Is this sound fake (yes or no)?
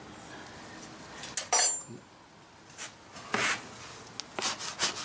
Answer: no